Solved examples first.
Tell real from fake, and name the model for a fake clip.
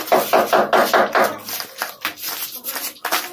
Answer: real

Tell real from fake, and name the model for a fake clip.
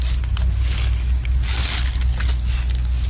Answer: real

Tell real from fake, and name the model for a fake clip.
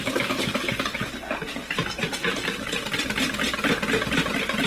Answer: real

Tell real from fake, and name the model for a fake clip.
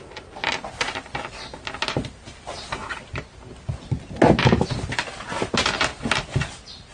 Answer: real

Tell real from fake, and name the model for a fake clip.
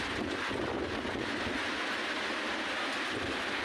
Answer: real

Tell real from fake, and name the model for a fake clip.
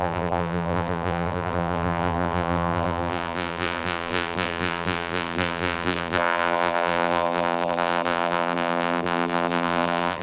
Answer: fake, vocoder, BigVGAN v2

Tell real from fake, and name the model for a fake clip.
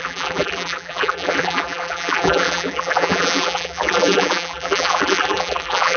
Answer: fake, vocoder, BigVGAN v2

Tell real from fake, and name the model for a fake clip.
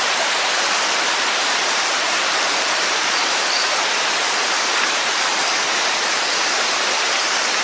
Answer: fake, vocoder, BigVGAN v2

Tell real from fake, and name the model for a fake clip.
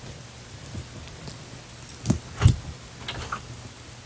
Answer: real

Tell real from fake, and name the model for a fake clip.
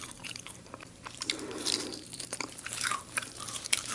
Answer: fake, vocoder, BigVGAN v2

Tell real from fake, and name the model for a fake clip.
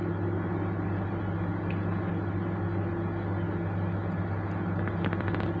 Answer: real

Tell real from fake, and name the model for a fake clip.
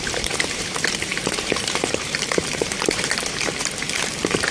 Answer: fake, vocoder, BigVGAN v2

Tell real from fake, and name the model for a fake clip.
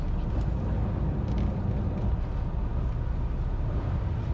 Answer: real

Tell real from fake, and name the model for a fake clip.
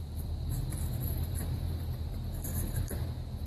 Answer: fake, vocoder, BigVGAN v2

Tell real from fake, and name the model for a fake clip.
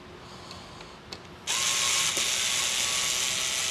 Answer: real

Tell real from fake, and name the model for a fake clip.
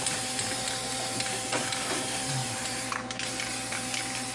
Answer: fake, vocoder, BigVGAN v2